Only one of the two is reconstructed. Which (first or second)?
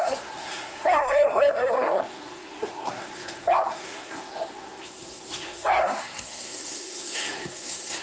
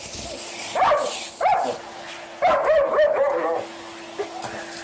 first